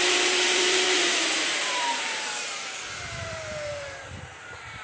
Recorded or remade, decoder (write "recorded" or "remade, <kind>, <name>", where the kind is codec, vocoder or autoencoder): remade, vocoder, BigVGAN v2